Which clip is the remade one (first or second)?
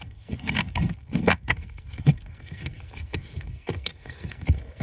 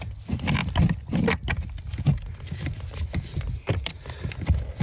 first